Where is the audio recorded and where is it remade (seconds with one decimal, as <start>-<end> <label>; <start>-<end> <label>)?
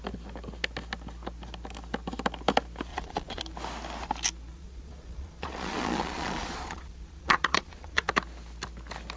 0.0-2.9 recorded; 2.9-3.4 remade; 3.4-4.5 recorded; 4.5-8.1 remade; 8.1-9.2 recorded